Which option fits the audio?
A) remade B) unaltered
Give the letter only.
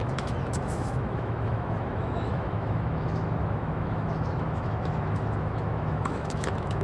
A